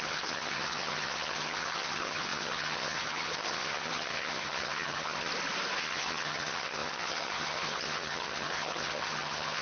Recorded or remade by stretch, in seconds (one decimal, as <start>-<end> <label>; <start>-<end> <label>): 0.0-5.3 remade; 5.3-5.8 recorded; 5.8-9.6 remade